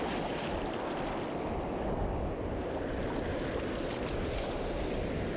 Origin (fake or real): real